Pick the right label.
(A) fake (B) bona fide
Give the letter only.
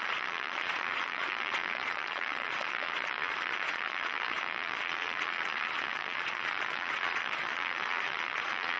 A